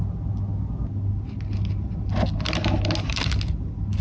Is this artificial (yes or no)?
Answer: no